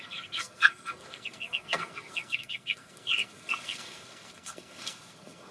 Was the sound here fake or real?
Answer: fake